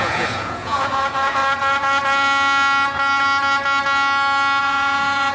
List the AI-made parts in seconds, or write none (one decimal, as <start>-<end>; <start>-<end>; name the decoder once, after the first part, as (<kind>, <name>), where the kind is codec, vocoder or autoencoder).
0.0-1.4 (vocoder, Vocos); 4.6-5.3